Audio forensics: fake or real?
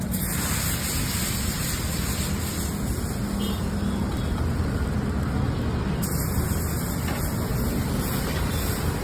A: real